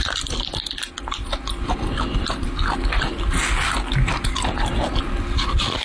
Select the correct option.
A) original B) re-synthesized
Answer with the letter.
A